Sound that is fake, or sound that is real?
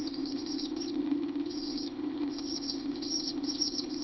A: fake